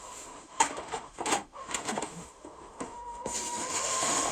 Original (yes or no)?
no